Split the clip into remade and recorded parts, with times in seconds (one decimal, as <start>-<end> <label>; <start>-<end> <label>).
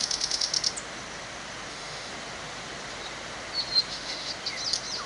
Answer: 0.0-0.5 remade; 0.5-1.7 recorded; 1.7-2.1 remade; 2.1-3.9 recorded; 3.9-4.3 remade; 4.3-5.1 recorded